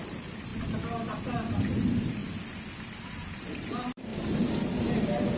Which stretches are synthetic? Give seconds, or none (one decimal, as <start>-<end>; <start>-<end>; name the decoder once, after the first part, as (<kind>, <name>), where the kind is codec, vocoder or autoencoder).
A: 0.0-2.2 (vocoder, BigVGAN v2); 3.0-5.4